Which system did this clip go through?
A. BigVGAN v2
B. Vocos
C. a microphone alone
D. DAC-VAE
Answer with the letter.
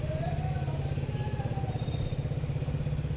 C